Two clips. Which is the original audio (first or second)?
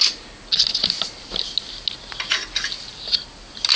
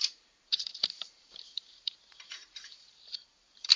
first